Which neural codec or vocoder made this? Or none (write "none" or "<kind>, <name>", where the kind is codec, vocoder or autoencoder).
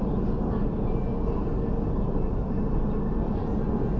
none